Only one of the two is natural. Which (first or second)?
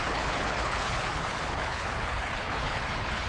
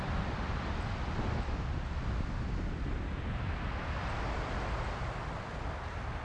second